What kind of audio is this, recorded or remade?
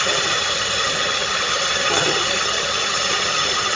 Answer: remade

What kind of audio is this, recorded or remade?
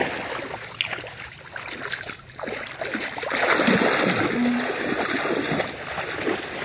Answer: recorded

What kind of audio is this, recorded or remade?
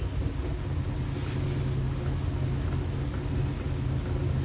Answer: recorded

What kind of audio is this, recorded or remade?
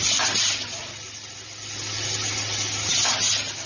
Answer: recorded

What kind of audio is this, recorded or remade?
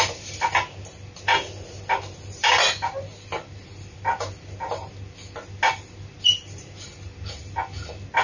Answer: recorded